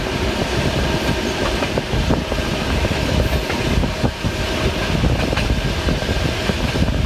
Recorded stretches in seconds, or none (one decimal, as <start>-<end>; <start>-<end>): 0.0-7.1